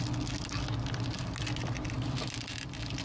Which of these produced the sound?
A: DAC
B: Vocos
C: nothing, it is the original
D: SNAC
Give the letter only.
C